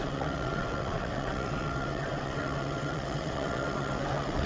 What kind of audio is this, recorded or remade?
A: remade